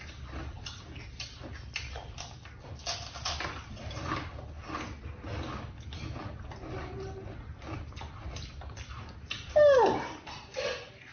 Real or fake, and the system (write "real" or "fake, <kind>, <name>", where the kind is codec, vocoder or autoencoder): real